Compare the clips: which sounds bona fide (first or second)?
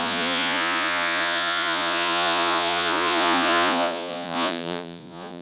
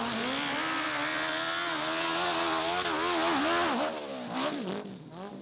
second